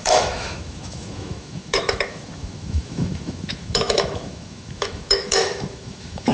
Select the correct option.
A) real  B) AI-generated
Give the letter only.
B